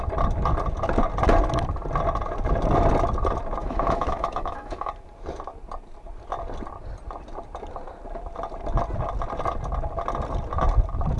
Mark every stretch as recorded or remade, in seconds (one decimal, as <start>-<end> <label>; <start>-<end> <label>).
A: 0.0-3.6 recorded; 3.6-4.9 remade; 4.9-11.2 recorded